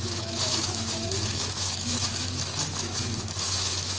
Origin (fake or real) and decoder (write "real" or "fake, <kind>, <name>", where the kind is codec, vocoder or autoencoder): fake, autoencoder, DAC-VAE